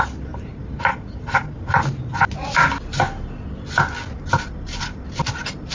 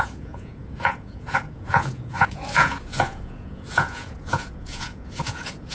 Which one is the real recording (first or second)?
first